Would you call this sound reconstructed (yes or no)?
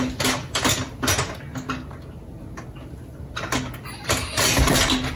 no